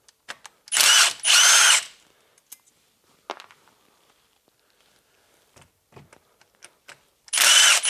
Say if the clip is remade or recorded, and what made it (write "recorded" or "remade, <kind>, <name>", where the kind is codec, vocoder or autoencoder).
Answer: recorded